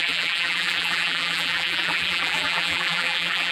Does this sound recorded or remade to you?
remade